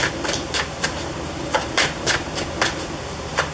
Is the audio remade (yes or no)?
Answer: yes